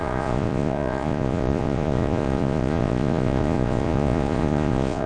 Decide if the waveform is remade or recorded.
remade